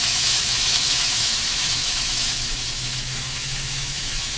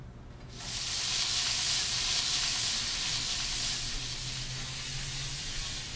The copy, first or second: first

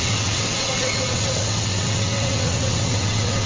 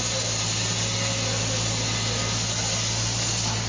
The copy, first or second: first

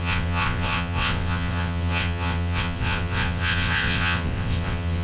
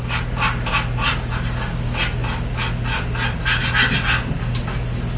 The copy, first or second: first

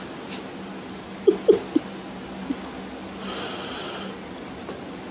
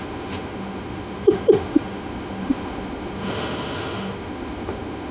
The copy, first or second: second